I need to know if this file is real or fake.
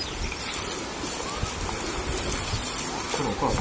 real